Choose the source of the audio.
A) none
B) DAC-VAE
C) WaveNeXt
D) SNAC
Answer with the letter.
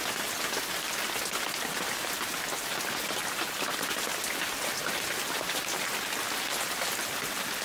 A